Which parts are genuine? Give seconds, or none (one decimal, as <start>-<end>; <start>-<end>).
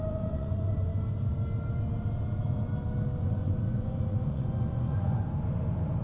0.9-3.2; 5.2-6.0